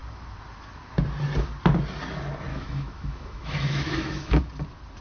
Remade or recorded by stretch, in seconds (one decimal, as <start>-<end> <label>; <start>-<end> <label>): 0.0-2.5 recorded; 2.5-4.4 remade; 4.4-5.0 recorded